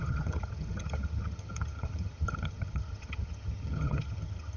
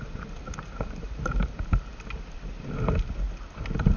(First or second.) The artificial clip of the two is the first